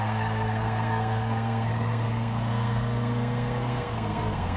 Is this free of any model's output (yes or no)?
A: no